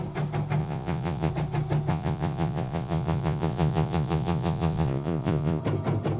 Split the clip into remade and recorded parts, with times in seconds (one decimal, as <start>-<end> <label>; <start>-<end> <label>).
0.0-0.6 recorded; 0.6-1.3 remade; 1.3-1.9 recorded; 1.9-5.6 remade; 5.6-6.2 recorded